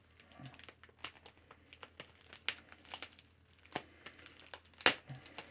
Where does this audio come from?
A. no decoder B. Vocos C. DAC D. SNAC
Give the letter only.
A